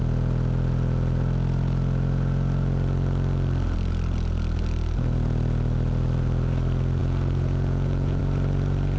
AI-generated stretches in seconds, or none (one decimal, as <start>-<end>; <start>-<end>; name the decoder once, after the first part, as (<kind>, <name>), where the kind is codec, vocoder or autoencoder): 7.0-8.2 (vocoder, Vocos)